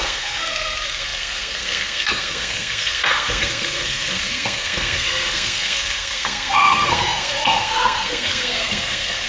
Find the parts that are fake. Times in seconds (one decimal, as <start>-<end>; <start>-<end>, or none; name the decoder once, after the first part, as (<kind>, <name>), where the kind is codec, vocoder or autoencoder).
0.0-9.3 (codec, SNAC)